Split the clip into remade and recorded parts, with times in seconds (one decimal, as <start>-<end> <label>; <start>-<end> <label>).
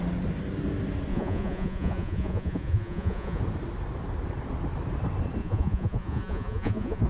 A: 0.0-1.1 recorded; 1.1-3.4 remade; 3.4-5.4 recorded; 5.4-7.1 remade